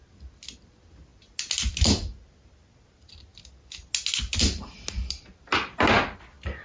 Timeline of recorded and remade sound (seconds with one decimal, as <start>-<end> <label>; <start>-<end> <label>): 0.0-6.6 recorded